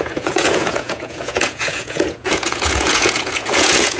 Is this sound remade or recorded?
remade